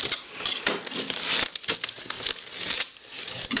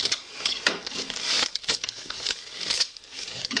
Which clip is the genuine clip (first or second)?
first